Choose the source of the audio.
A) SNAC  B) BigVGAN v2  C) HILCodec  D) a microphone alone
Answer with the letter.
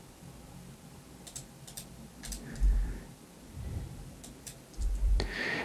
B